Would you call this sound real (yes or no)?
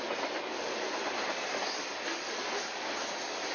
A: yes